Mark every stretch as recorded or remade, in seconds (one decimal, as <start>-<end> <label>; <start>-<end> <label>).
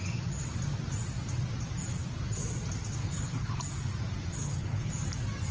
0.0-3.0 recorded; 3.0-3.6 remade; 3.6-4.4 recorded; 4.4-4.9 remade; 4.9-5.5 recorded